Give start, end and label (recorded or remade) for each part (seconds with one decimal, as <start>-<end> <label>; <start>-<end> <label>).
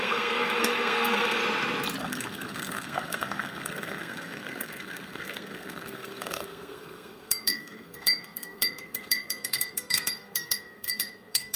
0.0-1.4 remade; 1.4-2.0 recorded; 2.0-11.6 remade